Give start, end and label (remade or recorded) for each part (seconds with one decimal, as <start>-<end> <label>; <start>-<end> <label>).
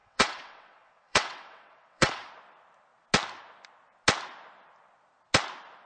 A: 0.0-2.3 remade; 2.3-5.9 recorded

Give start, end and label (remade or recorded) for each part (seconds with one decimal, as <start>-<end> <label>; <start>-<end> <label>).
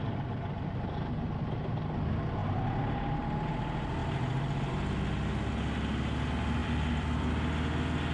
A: 0.0-4.0 recorded; 4.0-4.7 remade; 4.7-6.6 recorded; 6.6-7.3 remade; 7.3-8.1 recorded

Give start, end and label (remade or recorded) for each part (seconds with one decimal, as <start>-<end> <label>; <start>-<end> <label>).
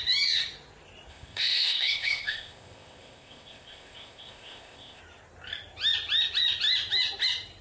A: 0.0-1.1 recorded; 1.1-5.0 remade; 5.0-7.6 recorded